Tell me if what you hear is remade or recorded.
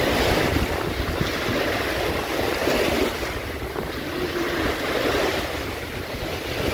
recorded